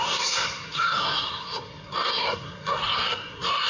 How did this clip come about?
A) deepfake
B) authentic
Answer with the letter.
A